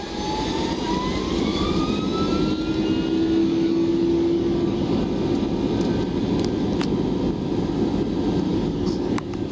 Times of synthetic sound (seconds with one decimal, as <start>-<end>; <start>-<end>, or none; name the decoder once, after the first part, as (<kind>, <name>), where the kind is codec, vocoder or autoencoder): 1.2-1.8 (codec, DAC); 3.4-5.0; 8.5-9.5